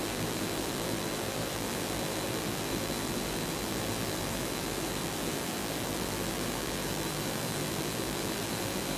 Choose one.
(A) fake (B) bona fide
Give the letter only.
A